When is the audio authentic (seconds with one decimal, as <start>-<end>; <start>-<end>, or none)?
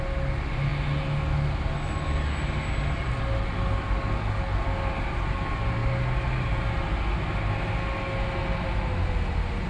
0.0-9.7